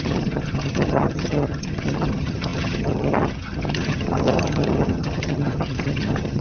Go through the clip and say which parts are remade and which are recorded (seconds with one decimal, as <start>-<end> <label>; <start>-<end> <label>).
0.0-6.4 remade